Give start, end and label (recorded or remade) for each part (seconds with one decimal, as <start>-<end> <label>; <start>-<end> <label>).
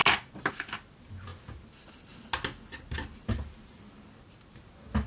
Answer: 0.0-5.1 recorded